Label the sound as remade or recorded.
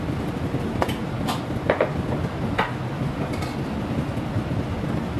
recorded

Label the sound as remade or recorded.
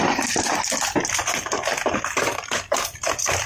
recorded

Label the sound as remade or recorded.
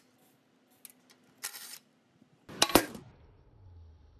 recorded